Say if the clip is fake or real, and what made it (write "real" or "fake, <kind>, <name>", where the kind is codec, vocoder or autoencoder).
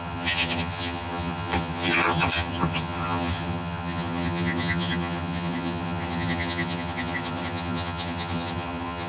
fake, vocoder, HiFi-GAN